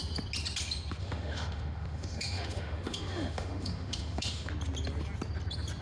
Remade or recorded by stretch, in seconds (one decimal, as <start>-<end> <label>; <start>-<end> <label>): 0.0-1.0 recorded; 1.0-4.5 remade; 4.5-5.8 recorded